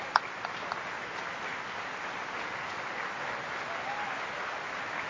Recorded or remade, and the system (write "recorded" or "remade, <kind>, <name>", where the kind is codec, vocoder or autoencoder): recorded